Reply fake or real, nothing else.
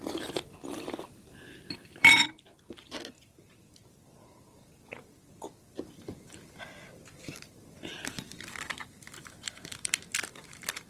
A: fake